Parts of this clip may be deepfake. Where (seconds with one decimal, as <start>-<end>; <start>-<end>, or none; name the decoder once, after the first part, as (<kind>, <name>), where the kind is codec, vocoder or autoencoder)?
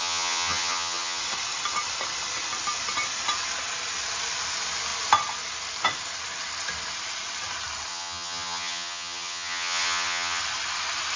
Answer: 0.0-1.2 (vocoder, HiFi-GAN); 7.9-10.4